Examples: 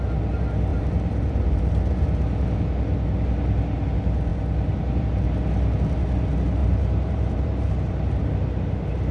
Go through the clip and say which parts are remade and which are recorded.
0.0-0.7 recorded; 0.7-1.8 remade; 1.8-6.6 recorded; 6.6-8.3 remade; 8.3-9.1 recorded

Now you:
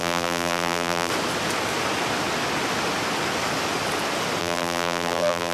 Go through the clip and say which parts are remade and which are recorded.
0.0-1.1 remade; 1.1-4.4 recorded; 4.4-5.5 remade

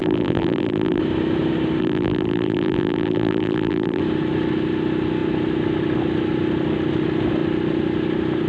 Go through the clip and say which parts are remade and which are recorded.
0.0-1.0 remade; 1.0-1.8 recorded; 1.8-4.0 remade; 4.0-8.5 recorded